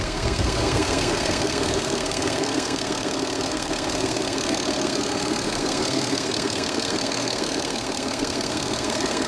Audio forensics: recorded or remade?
remade